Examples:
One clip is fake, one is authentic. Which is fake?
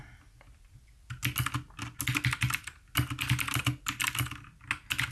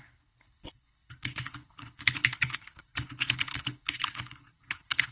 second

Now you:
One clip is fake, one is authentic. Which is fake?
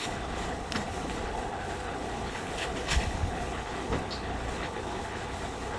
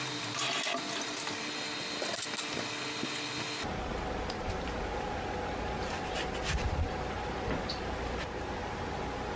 first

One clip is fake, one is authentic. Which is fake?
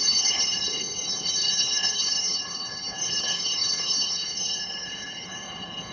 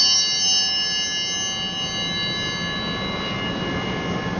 first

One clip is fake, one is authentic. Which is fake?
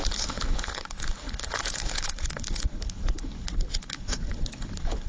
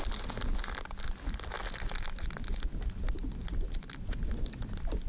first